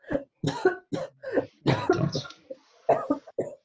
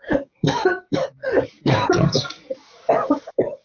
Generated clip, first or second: second